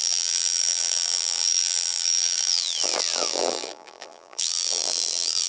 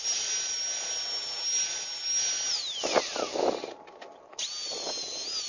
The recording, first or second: second